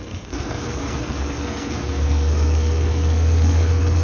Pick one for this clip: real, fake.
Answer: fake